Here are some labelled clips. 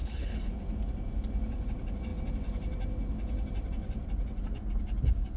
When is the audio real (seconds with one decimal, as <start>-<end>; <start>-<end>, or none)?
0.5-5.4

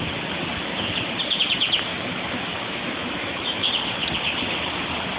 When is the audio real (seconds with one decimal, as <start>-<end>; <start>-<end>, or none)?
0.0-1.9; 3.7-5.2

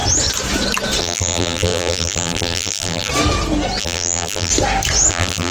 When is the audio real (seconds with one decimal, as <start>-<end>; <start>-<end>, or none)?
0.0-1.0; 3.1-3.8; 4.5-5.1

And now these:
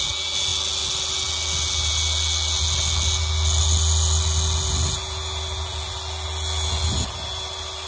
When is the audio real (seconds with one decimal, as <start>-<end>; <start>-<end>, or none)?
0.0-7.9

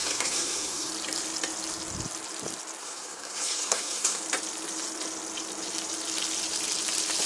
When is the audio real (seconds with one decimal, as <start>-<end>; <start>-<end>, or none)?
0.9-2.8; 4.2-7.3

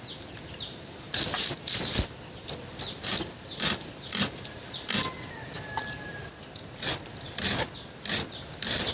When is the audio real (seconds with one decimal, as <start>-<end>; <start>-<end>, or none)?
0.0-8.9